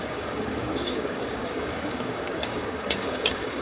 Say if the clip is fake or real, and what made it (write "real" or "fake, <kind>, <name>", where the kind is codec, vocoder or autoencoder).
fake, codec, DAC